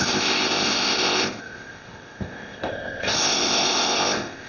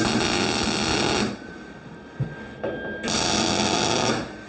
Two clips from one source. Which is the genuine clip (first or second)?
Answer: second